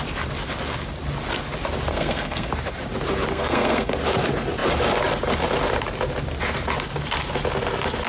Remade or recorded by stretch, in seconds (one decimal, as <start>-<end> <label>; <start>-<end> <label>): 0.0-1.9 recorded; 1.9-2.5 remade; 2.5-3.3 recorded; 3.3-3.9 remade; 3.9-8.1 recorded